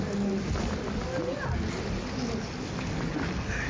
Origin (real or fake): real